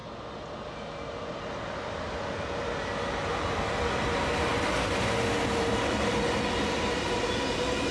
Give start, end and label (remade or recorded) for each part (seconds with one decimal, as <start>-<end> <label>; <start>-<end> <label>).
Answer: 0.0-7.9 recorded

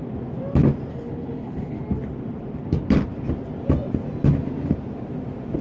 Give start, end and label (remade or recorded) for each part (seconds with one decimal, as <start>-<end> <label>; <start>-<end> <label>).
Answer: 0.0-0.9 recorded; 0.9-1.8 remade; 1.8-5.6 recorded

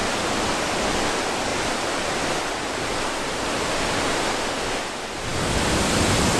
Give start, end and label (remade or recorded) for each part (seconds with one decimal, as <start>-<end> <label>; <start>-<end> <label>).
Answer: 0.0-6.4 recorded

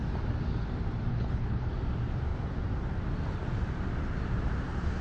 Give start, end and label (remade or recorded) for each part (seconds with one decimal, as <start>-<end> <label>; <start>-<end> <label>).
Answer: 0.0-1.1 recorded; 1.1-1.7 remade; 1.7-5.0 recorded

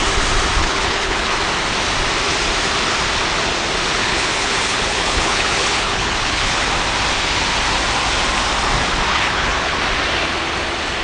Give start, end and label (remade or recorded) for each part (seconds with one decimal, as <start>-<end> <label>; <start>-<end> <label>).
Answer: 0.0-0.6 recorded; 0.6-1.4 remade; 1.4-4.0 recorded; 4.0-6.7 remade; 6.7-9.1 recorded; 9.1-9.8 remade; 9.8-11.0 recorded

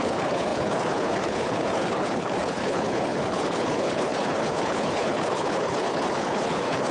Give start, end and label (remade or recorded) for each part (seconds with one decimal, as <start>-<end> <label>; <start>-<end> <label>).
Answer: 0.0-6.9 remade

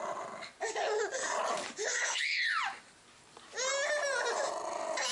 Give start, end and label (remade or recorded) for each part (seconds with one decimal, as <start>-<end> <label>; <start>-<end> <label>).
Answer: 0.0-1.9 recorded; 1.9-2.5 remade; 2.5-5.1 recorded